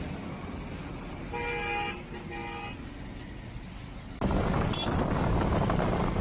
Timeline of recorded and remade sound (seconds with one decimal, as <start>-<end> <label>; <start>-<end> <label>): 0.0-6.2 recorded